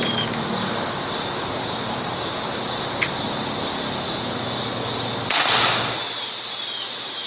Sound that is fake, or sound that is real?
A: real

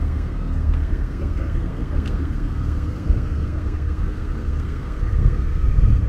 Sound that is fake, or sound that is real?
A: fake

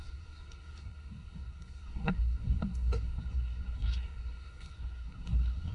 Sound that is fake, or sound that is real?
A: fake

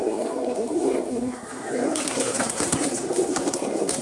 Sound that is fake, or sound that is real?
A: fake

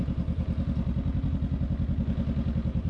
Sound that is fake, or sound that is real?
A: real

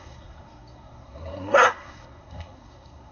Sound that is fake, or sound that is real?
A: fake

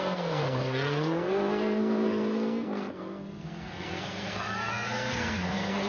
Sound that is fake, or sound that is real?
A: fake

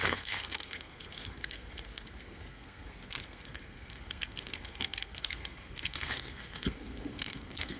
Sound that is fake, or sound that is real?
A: fake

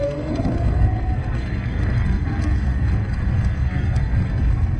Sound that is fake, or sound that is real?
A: fake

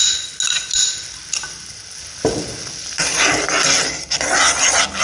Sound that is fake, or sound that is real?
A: real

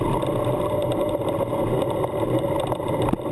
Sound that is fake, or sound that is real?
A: real